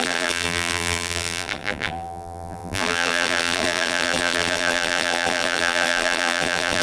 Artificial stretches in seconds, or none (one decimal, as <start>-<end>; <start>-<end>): 0.0-6.8